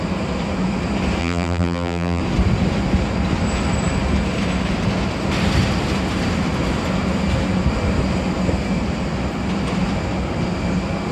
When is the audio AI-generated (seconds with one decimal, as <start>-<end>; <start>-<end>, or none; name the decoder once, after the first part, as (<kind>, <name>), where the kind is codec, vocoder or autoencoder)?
1.2-2.2 (vocoder, BigVGAN v2)